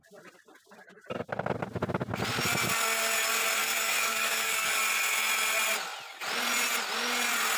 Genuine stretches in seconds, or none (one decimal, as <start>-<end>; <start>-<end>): 0.0-3.6; 4.8-7.6